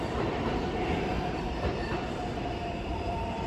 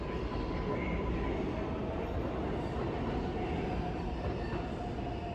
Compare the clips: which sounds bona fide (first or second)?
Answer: second